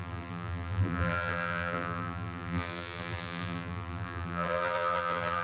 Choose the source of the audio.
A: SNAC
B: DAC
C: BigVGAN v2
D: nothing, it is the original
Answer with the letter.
C